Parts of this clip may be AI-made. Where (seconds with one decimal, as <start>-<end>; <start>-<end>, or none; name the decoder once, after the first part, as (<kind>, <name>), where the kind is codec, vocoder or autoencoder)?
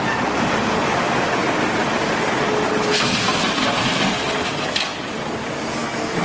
1.8-2.3 (vocoder, BigVGAN v2); 4.9-5.7